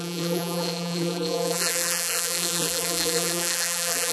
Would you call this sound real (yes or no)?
no